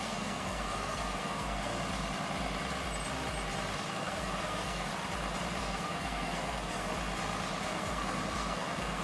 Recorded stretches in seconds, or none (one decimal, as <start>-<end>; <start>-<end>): 1.7-3.9; 4.9-5.6; 6.9-7.6